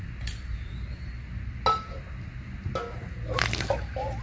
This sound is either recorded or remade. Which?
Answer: recorded